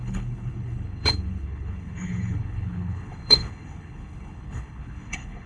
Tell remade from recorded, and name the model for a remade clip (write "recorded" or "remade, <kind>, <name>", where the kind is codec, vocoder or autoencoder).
remade, codec, HILCodec